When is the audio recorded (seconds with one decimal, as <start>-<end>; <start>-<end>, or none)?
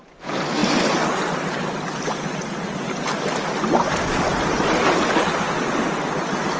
0.0-6.6